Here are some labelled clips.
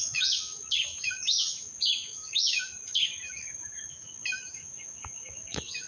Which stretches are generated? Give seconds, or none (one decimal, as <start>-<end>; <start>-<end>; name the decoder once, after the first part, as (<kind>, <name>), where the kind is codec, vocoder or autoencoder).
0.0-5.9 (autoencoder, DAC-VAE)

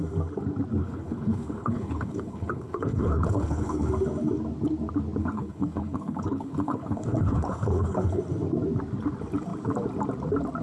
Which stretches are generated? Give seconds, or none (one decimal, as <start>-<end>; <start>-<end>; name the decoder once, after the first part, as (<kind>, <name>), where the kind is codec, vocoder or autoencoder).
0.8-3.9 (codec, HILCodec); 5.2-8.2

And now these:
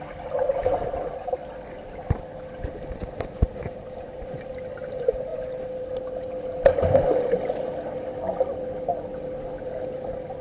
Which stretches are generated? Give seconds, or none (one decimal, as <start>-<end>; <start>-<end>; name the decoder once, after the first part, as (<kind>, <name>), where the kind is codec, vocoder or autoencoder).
1.4-2.6 (vocoder, BigVGAN v2); 5.3-8.5

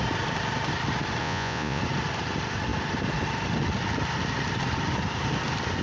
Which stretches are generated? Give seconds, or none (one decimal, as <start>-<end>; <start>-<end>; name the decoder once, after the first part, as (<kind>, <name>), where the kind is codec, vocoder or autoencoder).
1.2-1.8 (vocoder, Vocos)

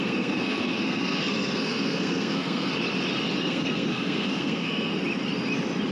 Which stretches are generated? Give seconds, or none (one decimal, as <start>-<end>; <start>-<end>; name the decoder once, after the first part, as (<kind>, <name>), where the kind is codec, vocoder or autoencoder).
0.0-2.7 (codec, SNAC); 3.4-4.9